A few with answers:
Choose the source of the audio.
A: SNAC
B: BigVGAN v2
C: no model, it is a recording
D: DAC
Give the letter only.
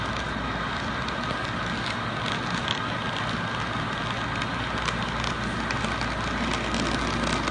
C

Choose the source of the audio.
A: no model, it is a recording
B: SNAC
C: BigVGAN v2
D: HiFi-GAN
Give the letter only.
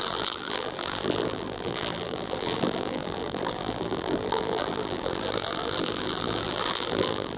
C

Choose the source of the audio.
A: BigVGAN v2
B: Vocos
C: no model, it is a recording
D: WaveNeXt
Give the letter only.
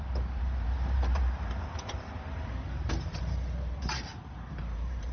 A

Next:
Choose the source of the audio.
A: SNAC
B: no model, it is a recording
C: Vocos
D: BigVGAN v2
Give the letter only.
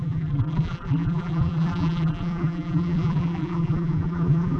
D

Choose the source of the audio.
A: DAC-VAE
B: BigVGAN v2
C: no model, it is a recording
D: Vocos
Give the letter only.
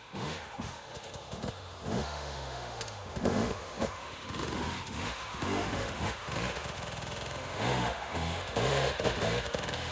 A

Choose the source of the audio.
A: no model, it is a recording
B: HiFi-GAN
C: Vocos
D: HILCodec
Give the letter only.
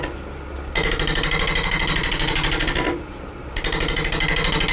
A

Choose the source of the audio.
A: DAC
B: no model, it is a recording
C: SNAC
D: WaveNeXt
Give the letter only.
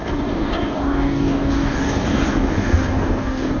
A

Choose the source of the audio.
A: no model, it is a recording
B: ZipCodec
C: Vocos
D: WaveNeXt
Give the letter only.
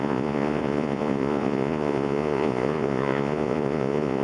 C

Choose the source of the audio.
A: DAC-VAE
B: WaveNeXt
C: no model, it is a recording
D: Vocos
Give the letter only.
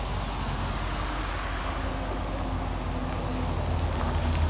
C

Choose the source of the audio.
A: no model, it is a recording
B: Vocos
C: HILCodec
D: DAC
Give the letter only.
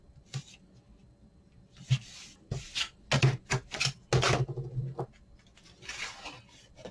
A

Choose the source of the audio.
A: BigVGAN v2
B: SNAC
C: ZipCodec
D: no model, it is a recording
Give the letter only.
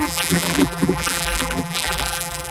A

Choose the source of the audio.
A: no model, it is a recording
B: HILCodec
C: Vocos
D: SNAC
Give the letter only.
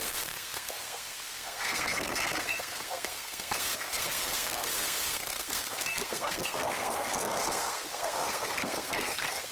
D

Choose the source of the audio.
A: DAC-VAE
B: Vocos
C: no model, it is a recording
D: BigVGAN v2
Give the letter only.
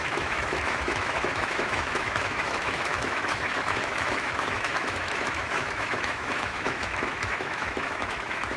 A